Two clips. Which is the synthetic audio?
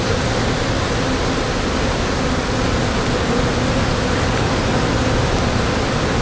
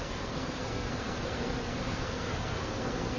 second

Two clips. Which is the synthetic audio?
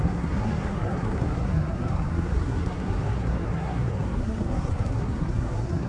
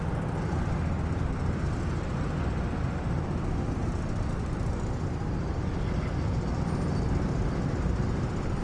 first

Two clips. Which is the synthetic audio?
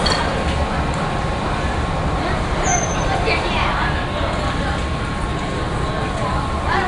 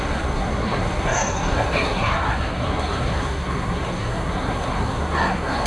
second